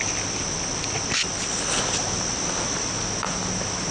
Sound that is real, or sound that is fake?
real